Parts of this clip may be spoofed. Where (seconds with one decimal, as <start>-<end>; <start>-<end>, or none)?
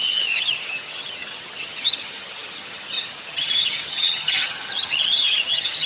0.0-5.9